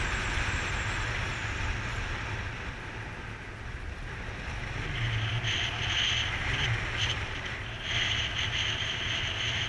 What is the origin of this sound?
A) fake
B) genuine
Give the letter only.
B